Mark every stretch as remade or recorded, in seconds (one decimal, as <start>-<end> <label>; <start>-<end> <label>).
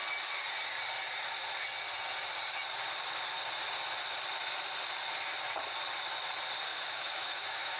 0.0-6.7 recorded; 6.7-7.8 remade